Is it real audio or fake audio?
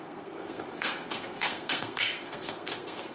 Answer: fake